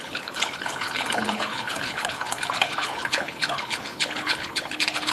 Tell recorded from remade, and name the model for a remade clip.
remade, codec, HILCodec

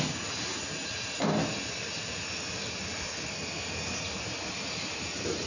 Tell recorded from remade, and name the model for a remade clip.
recorded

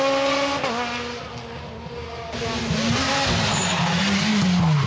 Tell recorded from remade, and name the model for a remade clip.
recorded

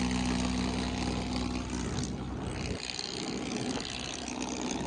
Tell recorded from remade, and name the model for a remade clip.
recorded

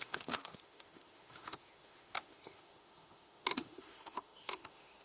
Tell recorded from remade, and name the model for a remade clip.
remade, autoencoder, DAC-VAE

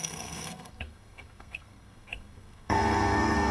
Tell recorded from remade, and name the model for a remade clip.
remade, codec, SNAC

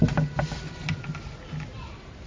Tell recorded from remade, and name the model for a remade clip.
recorded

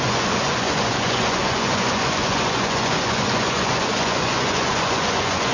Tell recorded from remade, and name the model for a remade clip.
remade, vocoder, Vocos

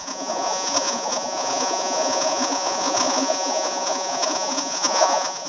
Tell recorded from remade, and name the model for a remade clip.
remade, vocoder, Vocos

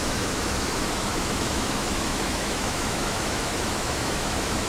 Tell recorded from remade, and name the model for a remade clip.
remade, autoencoder, DAC-VAE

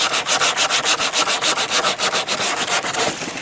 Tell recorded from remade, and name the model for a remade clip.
recorded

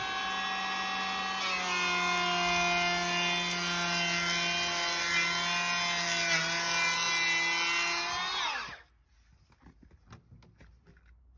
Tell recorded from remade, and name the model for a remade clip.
recorded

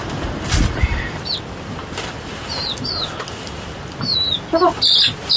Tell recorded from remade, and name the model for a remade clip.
recorded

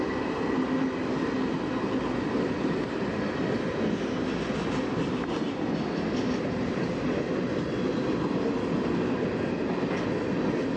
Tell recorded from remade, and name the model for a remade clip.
recorded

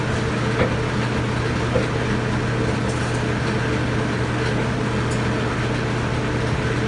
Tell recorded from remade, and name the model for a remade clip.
recorded